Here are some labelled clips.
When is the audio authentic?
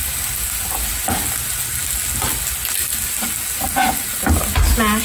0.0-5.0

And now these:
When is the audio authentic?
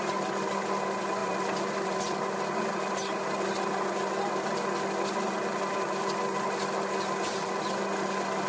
0.0-1.2; 2.1-8.5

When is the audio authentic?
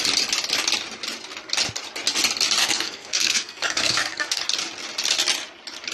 0.0-2.6; 4.4-5.9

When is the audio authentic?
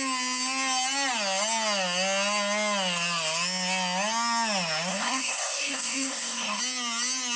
0.0-4.9; 6.6-7.4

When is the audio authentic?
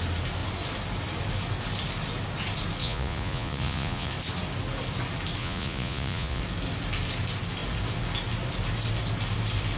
0.0-2.8; 4.1-5.4; 6.4-9.8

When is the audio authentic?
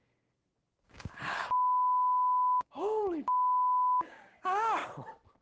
4.8-5.4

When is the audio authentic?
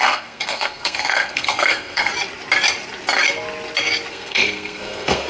2.1-4.1